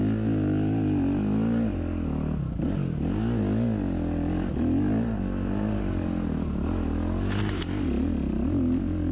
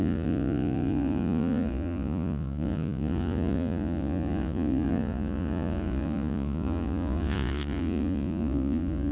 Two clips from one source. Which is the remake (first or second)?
second